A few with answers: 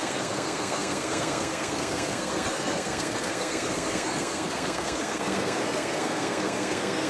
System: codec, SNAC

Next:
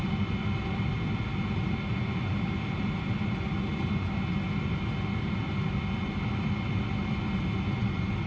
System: none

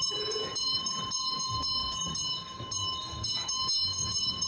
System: autoencoder, DAC-VAE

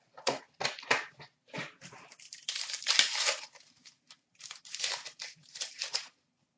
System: vocoder, BigVGAN v2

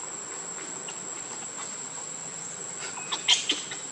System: none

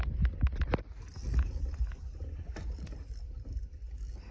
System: none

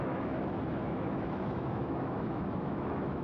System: autoencoder, DAC-VAE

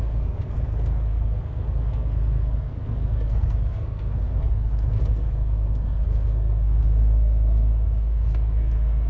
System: codec, SNAC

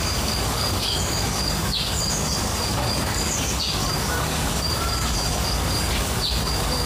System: codec, DAC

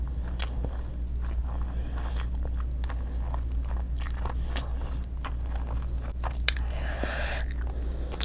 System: none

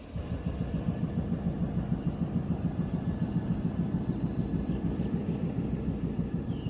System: none